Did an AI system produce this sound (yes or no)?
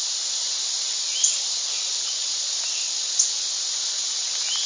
no